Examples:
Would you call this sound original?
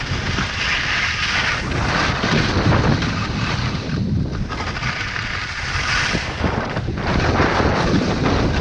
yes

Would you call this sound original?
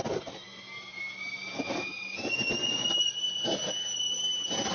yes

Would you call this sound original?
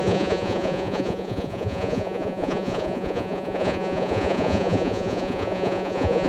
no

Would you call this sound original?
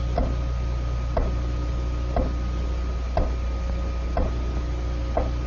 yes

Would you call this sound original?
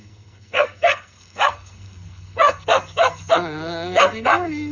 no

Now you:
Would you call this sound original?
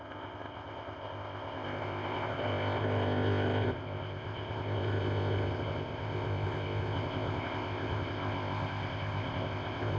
no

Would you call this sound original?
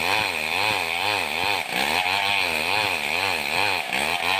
yes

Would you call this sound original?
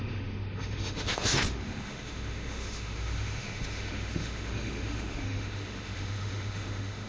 no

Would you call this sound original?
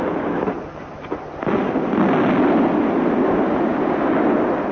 yes